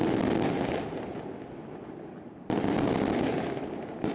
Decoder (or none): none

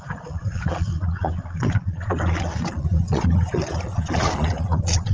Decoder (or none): vocoder, Vocos